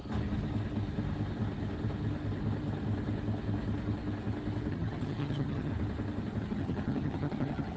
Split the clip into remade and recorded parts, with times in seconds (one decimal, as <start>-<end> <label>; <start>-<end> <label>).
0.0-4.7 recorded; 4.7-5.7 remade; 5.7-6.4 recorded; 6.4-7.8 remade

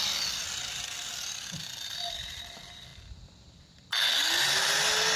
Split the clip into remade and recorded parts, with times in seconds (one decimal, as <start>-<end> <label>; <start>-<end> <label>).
0.0-2.9 remade; 2.9-5.2 recorded

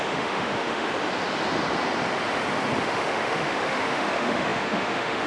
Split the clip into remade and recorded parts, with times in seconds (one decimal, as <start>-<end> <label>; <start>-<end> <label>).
0.0-0.9 remade; 0.9-2.8 recorded; 2.8-5.3 remade